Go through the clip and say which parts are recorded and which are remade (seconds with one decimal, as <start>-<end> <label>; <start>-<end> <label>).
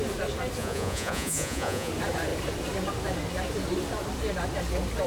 0.0-0.6 recorded; 0.6-1.9 remade; 1.9-5.1 recorded